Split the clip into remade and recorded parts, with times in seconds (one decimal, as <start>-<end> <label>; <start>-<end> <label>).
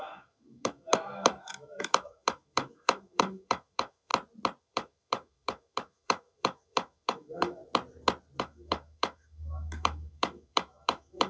0.0-4.1 remade; 4.1-4.6 recorded; 4.6-7.6 remade; 7.6-8.4 recorded; 8.4-11.3 remade